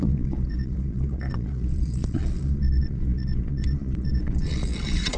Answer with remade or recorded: remade